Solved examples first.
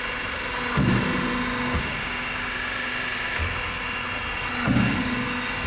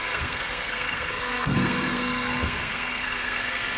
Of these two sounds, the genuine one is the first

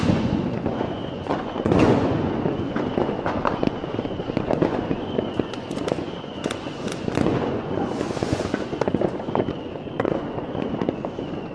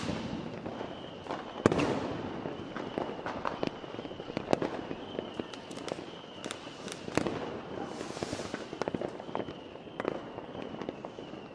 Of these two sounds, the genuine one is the second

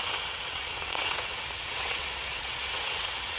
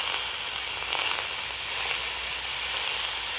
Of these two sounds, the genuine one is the second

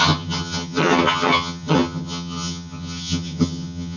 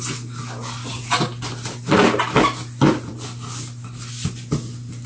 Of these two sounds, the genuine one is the second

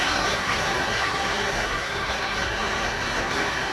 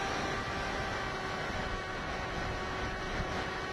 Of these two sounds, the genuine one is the second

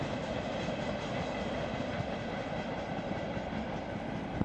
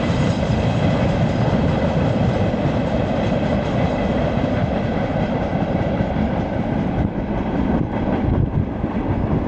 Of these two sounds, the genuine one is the first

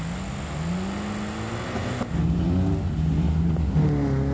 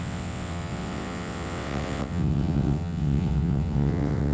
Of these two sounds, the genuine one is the first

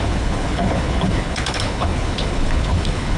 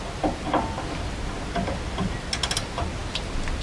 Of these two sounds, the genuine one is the second